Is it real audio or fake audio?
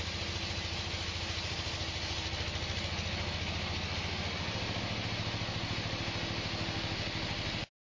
real